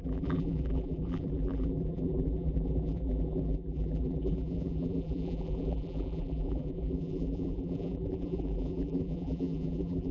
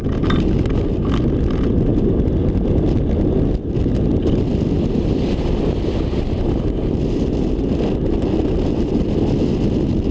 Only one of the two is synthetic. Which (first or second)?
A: first